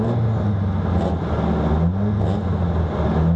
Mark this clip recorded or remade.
recorded